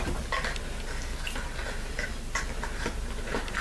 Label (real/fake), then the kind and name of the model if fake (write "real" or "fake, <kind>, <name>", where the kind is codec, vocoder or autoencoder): real